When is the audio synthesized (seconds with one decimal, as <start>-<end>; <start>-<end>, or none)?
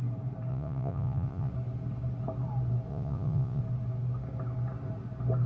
0.5-1.5; 2.9-3.6